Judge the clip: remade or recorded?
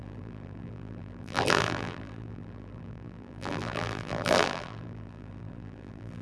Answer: remade